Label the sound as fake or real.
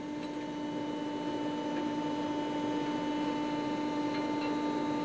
real